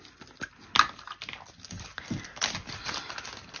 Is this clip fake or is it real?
real